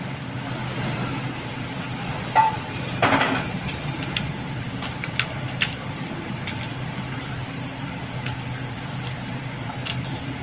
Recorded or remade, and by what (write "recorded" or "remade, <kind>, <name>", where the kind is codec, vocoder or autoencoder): remade, vocoder, BigVGAN v2